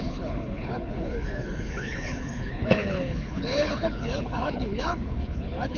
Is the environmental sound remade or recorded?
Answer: remade